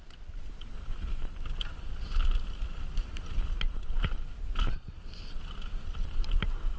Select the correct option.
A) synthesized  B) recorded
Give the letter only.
B